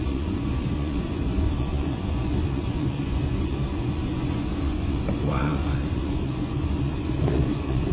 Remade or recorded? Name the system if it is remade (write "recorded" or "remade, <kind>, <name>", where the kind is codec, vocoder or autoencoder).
remade, vocoder, Vocos